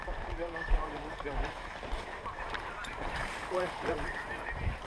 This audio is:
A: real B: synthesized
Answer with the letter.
B